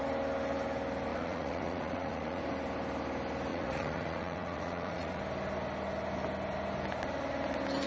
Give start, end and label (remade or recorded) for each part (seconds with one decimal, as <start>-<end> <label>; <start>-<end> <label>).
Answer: 0.0-1.1 recorded; 1.1-2.4 remade; 2.4-3.5 recorded; 3.5-5.2 remade; 5.2-7.9 recorded